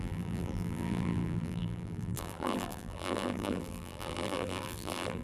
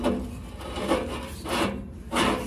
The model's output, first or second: first